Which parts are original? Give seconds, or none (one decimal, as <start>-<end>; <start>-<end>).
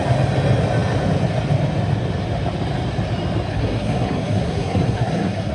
0.0-3.5